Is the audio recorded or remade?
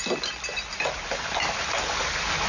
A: recorded